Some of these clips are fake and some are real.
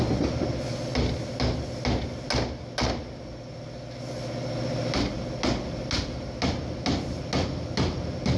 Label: real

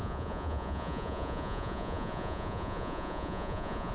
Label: fake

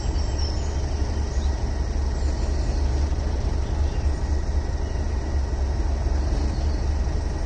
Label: real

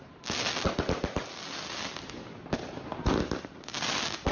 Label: real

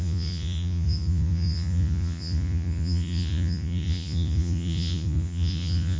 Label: fake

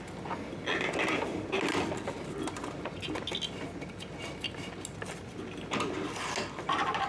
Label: real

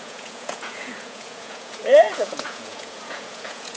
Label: fake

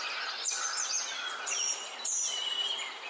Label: real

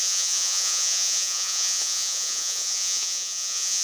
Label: fake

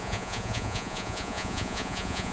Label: fake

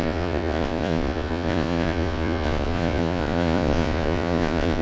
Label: fake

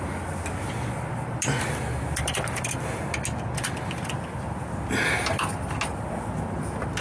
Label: real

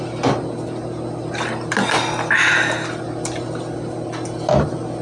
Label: real